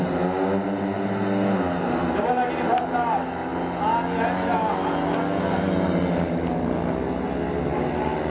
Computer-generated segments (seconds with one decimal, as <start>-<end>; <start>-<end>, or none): none